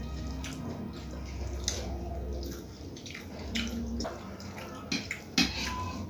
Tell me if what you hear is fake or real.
real